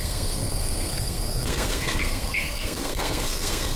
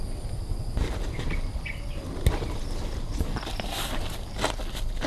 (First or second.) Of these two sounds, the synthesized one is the first